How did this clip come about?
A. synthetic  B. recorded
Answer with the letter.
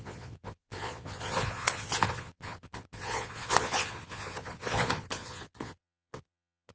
A